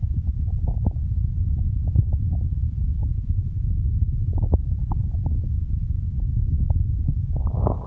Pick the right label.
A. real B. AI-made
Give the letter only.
A